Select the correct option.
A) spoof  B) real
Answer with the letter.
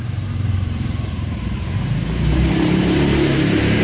A